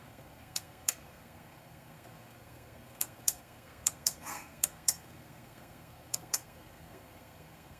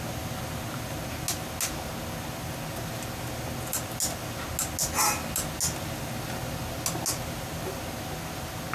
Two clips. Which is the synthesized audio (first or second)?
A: first